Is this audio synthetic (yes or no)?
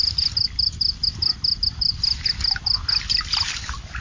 no